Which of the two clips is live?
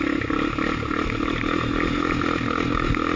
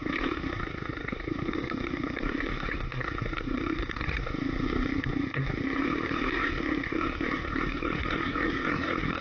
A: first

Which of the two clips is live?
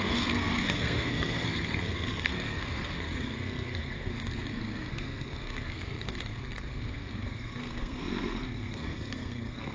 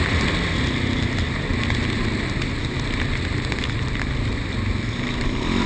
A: second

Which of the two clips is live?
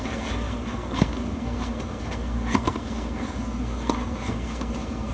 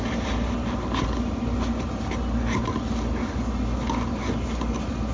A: second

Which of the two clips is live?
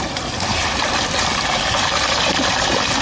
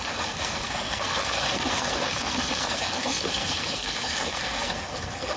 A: first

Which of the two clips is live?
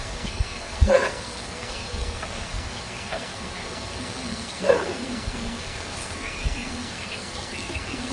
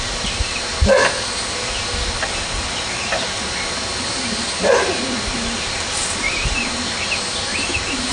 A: second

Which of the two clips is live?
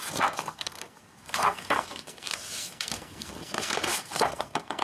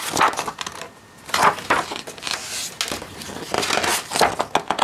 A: second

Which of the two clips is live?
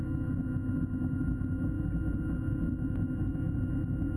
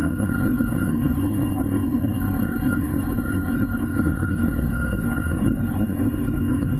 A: first